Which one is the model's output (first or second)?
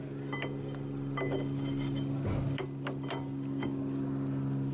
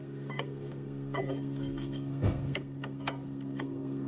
second